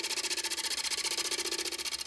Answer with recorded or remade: recorded